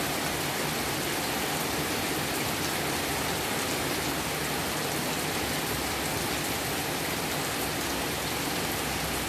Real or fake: real